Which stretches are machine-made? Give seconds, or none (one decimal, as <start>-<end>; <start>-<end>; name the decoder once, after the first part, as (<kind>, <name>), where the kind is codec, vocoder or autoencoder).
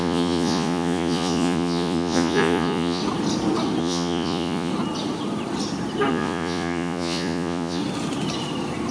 0.0-3.0 (vocoder, Vocos); 3.8-4.7; 6.1-7.8